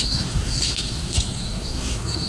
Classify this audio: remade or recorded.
remade